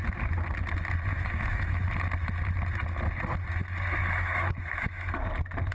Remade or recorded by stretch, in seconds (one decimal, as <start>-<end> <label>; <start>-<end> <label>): 0.0-1.1 recorded; 1.1-1.8 remade; 1.8-4.0 recorded; 4.0-5.1 remade; 5.1-5.7 recorded